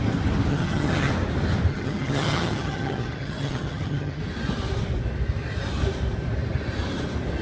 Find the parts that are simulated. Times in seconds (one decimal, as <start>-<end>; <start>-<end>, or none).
0.5-1.1; 1.7-4.2